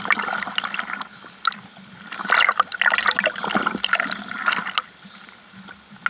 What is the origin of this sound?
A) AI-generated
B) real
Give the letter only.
B